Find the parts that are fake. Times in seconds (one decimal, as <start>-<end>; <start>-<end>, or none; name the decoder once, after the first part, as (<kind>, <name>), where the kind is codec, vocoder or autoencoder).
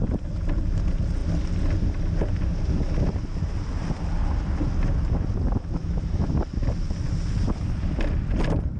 5.8-6.3 (autoencoder, DAC-VAE)